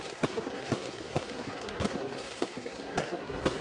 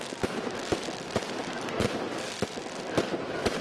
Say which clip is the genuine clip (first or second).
second